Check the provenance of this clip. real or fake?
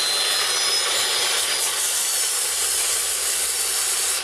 real